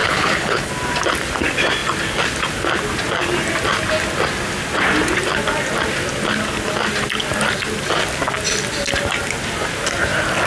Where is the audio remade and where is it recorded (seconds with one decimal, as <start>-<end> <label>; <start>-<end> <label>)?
0.0-0.7 remade; 0.7-10.5 recorded